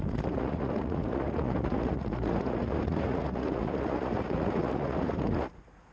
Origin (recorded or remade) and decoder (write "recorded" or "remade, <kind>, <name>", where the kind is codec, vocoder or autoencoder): remade, vocoder, Vocos